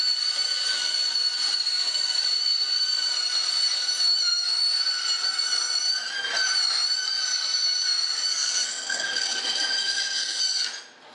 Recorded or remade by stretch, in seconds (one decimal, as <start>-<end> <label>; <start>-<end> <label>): 0.0-8.3 recorded; 8.3-10.4 remade; 10.4-11.1 recorded